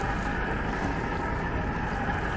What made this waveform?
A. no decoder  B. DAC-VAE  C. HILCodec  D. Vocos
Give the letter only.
A